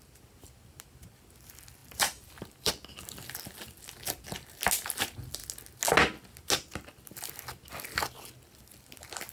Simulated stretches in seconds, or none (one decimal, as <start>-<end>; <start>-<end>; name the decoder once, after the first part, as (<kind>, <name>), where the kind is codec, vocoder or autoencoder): 1.8-2.7 (vocoder, BigVGAN v2)